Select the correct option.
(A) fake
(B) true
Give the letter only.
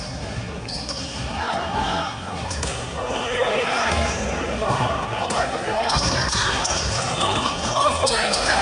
A